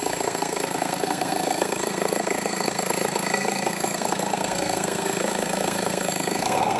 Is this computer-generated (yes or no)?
yes